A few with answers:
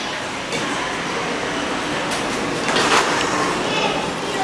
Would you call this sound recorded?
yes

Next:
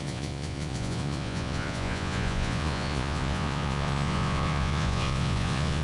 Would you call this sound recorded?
no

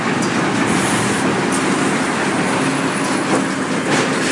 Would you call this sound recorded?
yes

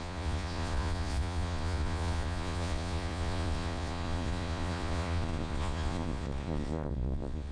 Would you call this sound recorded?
no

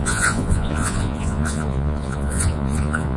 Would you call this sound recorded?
no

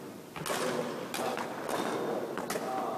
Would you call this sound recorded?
yes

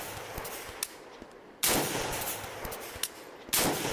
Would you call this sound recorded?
yes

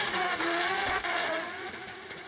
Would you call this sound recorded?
no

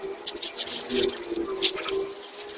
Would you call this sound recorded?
yes